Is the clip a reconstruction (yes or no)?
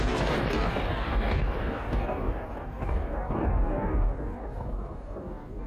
yes